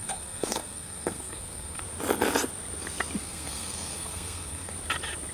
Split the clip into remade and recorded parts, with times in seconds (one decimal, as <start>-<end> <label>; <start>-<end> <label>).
0.0-1.8 remade; 1.8-3.2 recorded; 3.2-4.7 remade; 4.7-5.3 recorded